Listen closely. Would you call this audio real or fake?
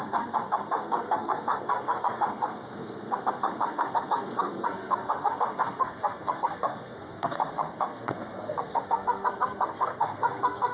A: fake